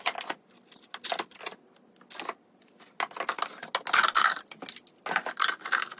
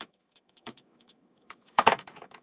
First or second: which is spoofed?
second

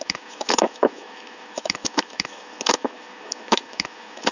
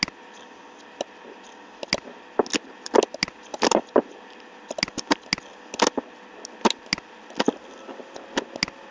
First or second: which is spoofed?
first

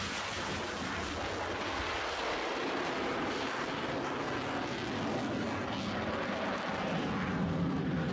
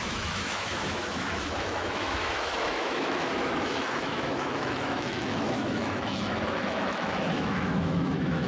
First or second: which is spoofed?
second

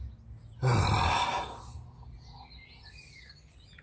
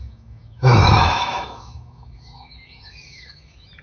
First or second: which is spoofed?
second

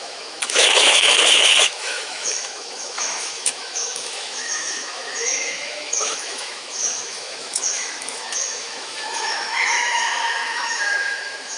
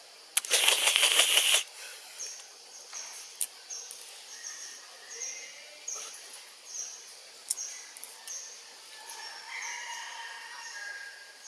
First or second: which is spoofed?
first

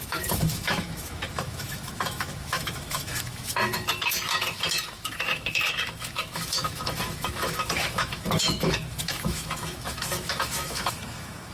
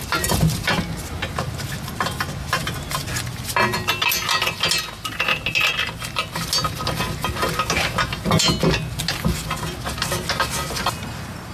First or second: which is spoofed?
first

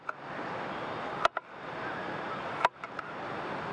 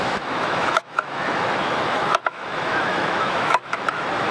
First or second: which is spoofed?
second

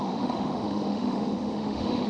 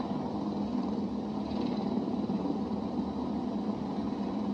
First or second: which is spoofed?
first